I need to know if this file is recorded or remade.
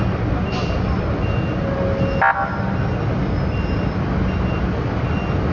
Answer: recorded